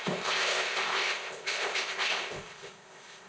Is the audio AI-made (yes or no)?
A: yes